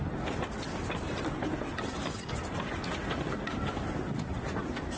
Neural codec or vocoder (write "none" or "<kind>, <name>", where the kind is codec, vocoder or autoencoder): none